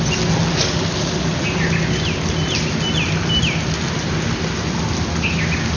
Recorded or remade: recorded